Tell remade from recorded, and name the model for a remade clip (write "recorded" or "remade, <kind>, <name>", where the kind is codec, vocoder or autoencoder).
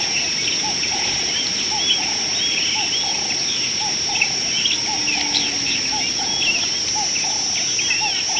recorded